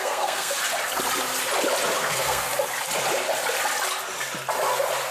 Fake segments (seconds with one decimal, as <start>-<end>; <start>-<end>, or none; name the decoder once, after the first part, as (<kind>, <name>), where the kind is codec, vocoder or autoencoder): 0.0-0.6 (codec, SNAC); 2.0-2.5

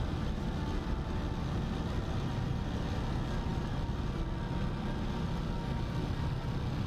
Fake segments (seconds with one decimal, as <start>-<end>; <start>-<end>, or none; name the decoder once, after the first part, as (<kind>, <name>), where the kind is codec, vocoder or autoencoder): none

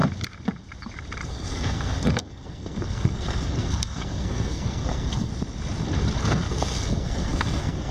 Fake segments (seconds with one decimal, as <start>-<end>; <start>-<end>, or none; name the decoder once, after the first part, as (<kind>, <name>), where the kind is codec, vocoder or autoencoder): 1.3-5.3 (codec, SNAC); 6.2-7.9

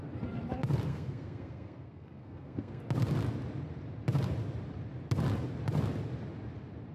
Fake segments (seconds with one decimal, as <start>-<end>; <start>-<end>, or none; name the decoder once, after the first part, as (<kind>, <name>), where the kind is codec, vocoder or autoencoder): 0.9-2.8 (codec, SNAC)

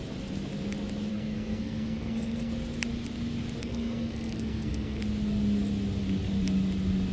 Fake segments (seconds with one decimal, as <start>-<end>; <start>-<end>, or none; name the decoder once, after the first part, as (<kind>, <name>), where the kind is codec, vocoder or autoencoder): 1.1-2.5 (codec, SNAC); 3.6-5.0

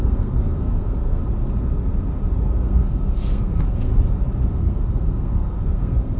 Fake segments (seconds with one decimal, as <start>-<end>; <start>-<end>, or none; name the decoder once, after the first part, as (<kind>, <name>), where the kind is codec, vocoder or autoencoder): 0.0-1.2 (codec, SNAC); 2.4-3.9; 4.5-6.2

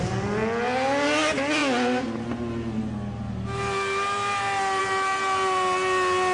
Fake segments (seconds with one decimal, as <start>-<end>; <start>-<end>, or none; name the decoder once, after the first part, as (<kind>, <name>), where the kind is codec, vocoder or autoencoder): none

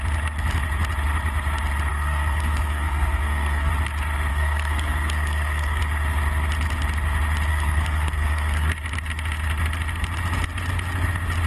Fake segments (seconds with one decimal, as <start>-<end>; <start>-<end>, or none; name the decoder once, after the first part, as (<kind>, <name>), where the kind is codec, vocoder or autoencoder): 1.9-3.7 (codec, SNAC); 4.3-5.8; 7.5-8.7